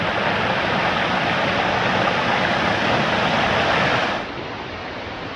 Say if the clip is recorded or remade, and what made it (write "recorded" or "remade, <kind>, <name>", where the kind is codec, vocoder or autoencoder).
recorded